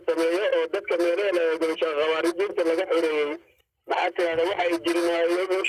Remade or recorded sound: recorded